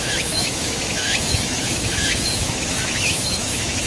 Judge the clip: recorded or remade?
remade